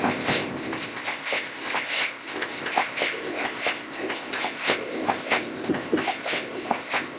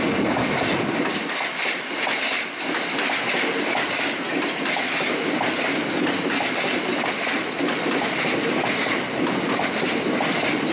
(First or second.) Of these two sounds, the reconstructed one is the first